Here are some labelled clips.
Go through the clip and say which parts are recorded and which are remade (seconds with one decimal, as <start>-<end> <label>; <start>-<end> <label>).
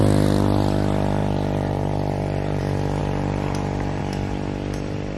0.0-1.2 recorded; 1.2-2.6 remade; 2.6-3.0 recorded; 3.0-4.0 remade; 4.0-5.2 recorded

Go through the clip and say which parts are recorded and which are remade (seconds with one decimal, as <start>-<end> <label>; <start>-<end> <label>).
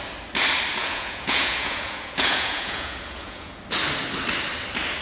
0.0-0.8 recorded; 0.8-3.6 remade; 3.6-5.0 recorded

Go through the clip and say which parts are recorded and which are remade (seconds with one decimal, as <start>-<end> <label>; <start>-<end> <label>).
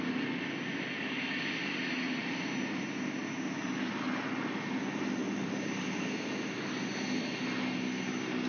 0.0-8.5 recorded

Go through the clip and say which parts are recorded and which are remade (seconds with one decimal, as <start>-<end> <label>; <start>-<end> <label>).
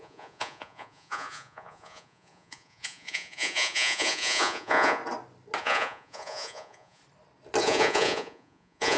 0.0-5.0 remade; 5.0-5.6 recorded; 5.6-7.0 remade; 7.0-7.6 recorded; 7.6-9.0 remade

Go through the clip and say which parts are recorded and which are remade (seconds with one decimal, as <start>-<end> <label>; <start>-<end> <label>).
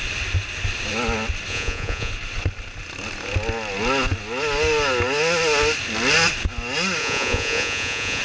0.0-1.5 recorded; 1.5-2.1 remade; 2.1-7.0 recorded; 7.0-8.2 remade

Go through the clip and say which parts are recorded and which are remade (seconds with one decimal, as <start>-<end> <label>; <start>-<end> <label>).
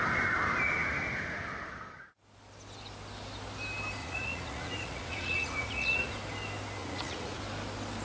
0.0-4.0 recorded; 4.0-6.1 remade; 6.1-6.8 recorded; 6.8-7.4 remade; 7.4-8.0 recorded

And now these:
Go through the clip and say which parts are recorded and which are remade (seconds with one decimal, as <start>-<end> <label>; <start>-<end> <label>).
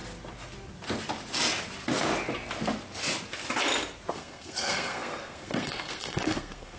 0.0-4.1 recorded; 4.1-6.8 remade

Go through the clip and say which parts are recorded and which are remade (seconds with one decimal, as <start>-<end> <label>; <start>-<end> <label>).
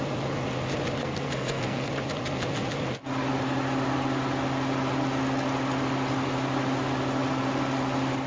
0.0-1.0 recorded; 1.0-1.9 remade; 1.9-8.3 recorded